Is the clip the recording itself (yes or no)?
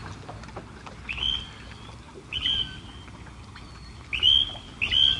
yes